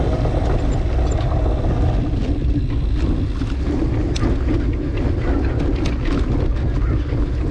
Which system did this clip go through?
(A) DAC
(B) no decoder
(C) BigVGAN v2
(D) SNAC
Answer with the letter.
B